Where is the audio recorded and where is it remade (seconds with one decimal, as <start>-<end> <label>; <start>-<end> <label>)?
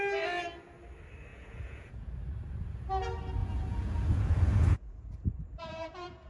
0.0-1.3 recorded; 1.3-2.1 remade; 2.1-3.4 recorded; 3.4-6.3 remade